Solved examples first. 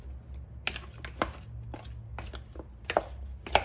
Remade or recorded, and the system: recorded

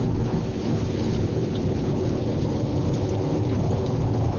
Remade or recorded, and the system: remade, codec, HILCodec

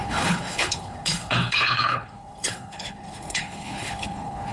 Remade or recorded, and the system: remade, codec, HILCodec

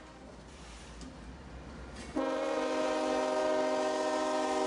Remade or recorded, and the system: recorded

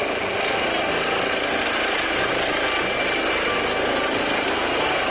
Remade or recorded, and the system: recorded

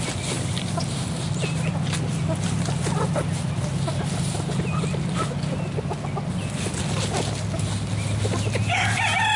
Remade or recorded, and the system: recorded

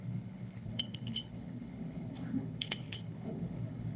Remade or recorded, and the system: remade, codec, HILCodec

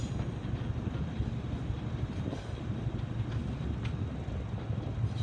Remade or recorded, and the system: recorded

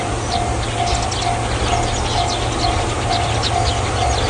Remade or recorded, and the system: recorded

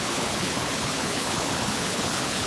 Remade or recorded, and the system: remade, codec, HILCodec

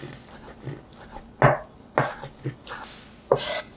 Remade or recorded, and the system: recorded